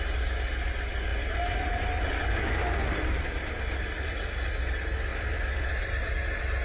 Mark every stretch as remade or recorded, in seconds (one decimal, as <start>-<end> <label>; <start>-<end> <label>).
0.0-1.1 recorded; 1.1-4.5 remade; 4.5-5.1 recorded; 5.1-6.1 remade; 6.1-6.6 recorded